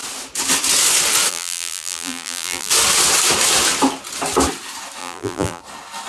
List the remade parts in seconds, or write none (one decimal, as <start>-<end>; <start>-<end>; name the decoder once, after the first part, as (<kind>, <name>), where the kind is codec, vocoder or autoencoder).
1.3-2.7 (vocoder, BigVGAN v2); 5.0-5.6